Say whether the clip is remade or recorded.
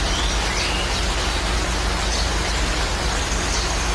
recorded